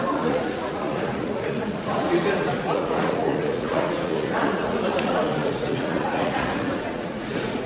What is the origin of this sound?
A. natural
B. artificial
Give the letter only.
B